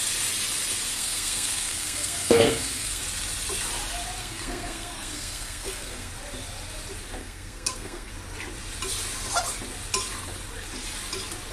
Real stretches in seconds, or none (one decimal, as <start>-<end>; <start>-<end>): 0.0-0.9; 3.0-4.2; 6.1-7.2; 8.1-11.5